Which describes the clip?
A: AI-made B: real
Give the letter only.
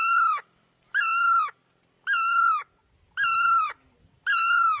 B